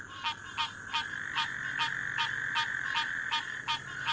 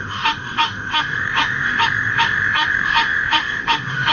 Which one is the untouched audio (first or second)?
first